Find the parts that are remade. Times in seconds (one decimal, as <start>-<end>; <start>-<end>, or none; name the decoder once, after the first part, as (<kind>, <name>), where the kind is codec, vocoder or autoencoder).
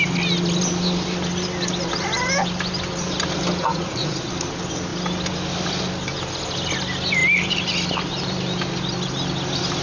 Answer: 3.6-4.3 (vocoder, Vocos)